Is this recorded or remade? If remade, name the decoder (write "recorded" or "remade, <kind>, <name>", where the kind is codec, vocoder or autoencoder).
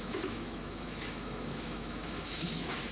remade, autoencoder, DAC-VAE